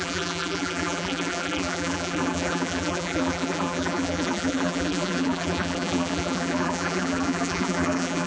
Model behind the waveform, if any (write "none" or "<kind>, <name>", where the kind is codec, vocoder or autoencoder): vocoder, BigVGAN v2